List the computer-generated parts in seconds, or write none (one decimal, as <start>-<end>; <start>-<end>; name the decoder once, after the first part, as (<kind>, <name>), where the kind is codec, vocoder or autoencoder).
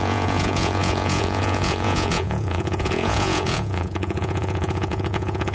0.0-5.5 (vocoder, Vocos)